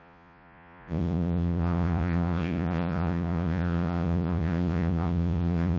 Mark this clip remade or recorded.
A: remade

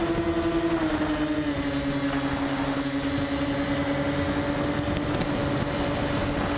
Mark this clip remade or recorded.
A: recorded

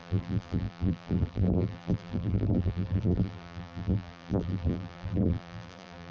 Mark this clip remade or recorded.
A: remade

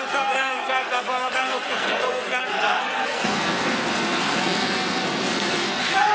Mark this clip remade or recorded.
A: remade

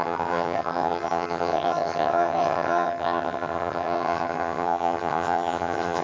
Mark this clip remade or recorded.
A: remade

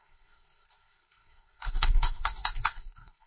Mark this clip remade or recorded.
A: remade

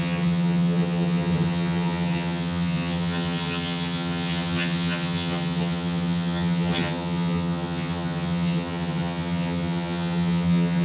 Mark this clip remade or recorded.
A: remade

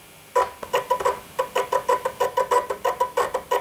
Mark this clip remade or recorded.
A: recorded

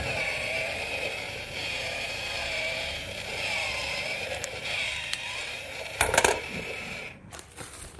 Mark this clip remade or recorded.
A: remade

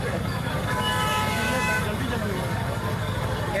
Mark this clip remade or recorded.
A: remade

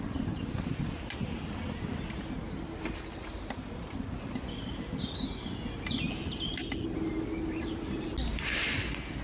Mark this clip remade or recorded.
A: recorded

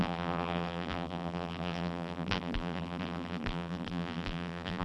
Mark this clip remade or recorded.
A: remade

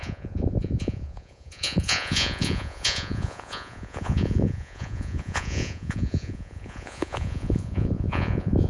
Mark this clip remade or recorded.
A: remade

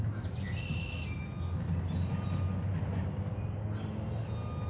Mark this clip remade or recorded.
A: recorded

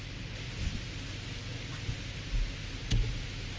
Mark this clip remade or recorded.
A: recorded